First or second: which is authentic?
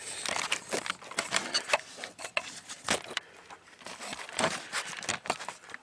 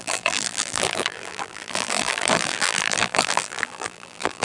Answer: first